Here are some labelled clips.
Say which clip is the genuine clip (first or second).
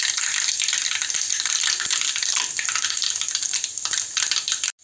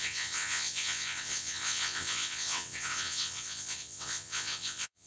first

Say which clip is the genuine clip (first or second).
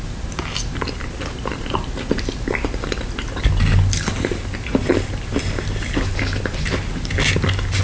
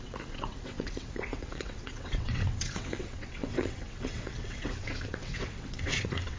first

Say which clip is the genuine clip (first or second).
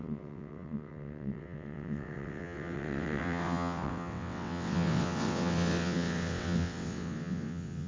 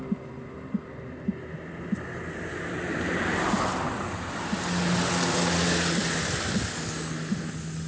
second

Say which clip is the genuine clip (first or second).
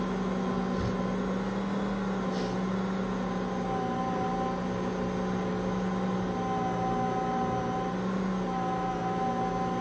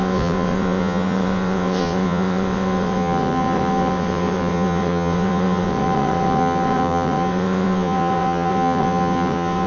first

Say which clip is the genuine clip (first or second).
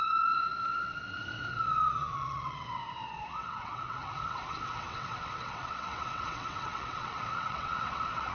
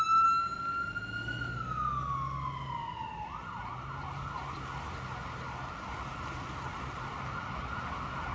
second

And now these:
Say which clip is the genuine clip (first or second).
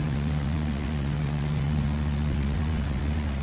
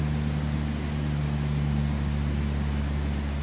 second